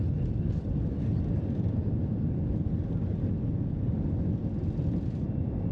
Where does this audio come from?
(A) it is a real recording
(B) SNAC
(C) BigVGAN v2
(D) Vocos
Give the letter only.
A